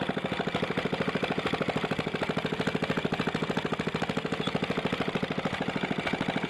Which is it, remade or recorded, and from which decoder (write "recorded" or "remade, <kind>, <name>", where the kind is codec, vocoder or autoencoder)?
recorded